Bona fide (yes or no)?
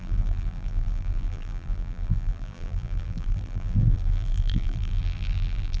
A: no